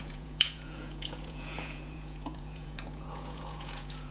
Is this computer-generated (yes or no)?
yes